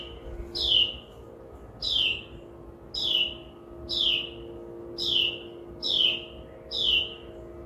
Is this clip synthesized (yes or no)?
no